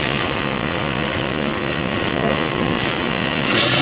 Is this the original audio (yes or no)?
no